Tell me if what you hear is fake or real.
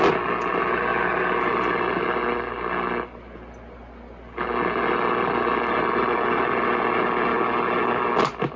real